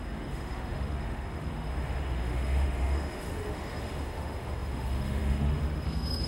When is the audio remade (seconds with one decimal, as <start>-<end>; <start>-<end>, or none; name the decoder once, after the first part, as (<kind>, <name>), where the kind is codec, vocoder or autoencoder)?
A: 0.0-6.3 (autoencoder, DAC-VAE)